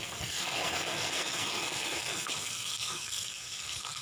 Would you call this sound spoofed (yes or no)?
yes